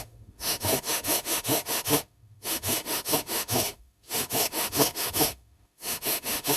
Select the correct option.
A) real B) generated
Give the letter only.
B